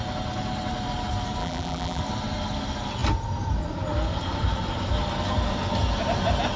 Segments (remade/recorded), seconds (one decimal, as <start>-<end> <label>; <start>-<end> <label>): 0.0-1.4 recorded; 1.4-2.0 remade; 2.0-6.6 recorded